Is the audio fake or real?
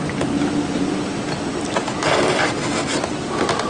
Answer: real